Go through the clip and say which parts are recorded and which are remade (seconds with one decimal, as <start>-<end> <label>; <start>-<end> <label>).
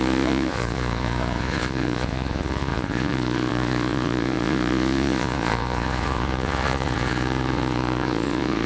0.0-8.7 remade